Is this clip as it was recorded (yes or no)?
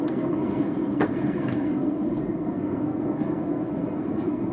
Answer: no